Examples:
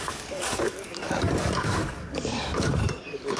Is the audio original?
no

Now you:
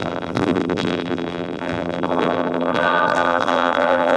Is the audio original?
no